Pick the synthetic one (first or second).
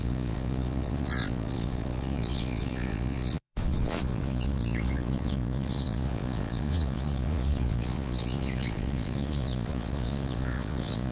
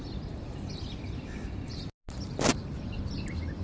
first